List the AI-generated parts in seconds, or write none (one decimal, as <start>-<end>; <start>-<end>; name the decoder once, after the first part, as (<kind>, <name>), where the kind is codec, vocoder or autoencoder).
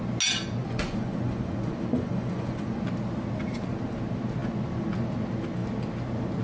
0.6-2.8 (vocoder, Vocos)